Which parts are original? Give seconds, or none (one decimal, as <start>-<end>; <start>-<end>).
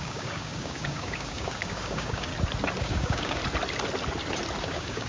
2.3-2.8; 3.4-4.6